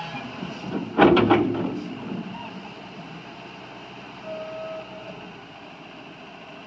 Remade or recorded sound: recorded